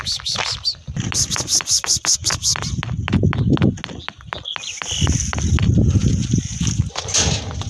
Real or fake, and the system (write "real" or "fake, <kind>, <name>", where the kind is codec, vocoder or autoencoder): real